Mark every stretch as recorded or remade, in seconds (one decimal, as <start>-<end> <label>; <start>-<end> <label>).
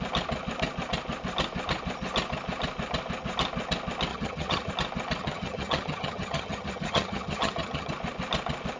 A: 0.0-4.1 recorded; 4.1-4.7 remade; 4.7-5.2 recorded; 5.2-7.9 remade; 7.9-8.8 recorded